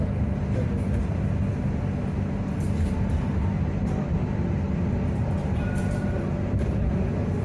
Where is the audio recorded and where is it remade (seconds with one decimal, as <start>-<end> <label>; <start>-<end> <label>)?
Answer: 0.0-7.4 recorded